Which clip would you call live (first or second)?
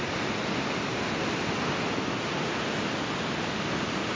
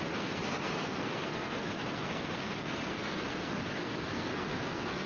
first